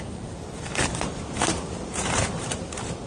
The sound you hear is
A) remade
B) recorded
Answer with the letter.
A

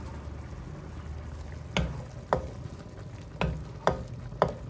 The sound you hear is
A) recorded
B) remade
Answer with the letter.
A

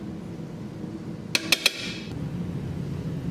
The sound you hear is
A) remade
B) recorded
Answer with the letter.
B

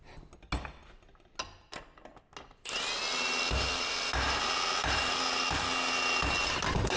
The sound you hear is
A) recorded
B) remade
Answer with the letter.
A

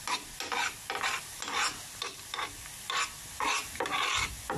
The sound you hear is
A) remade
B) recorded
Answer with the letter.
B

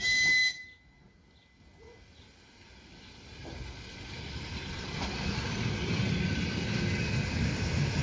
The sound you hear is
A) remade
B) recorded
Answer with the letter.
B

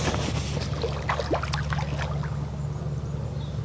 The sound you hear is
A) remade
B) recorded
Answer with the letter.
B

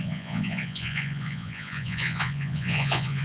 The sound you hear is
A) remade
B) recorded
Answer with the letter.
A